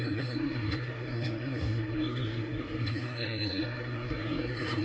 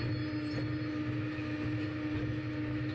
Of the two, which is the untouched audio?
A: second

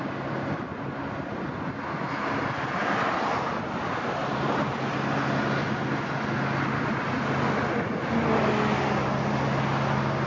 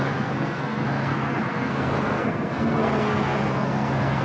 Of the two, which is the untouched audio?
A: first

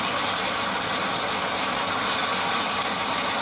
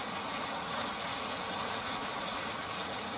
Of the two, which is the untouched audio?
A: first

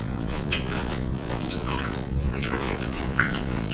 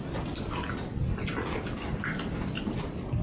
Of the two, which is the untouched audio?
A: second